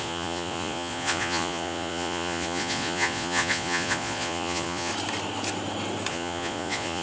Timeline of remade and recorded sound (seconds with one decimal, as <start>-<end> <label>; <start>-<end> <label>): 0.0-4.9 remade; 4.9-6.1 recorded; 6.1-7.0 remade